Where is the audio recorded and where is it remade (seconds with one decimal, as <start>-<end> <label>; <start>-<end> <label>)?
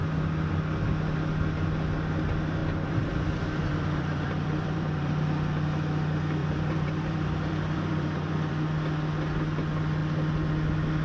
0.0-2.6 recorded; 2.6-5.1 remade; 5.1-6.4 recorded; 6.4-8.5 remade; 8.5-11.0 recorded